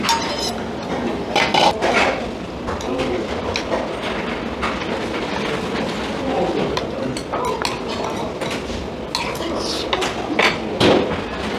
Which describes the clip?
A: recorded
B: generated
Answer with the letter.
A